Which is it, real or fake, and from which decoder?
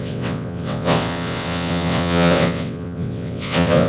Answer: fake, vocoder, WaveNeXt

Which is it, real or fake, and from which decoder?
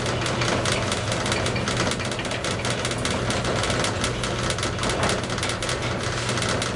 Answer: real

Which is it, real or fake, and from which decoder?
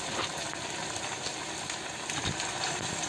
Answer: real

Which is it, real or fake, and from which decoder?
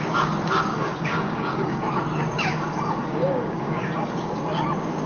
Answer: fake, codec, DAC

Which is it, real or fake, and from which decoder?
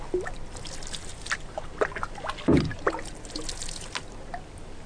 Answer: real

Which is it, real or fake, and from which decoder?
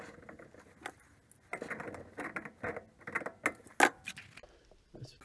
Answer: real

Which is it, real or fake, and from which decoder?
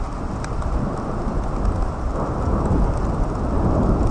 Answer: real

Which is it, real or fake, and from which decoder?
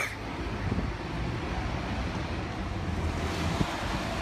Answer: real